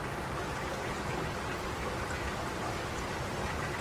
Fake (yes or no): no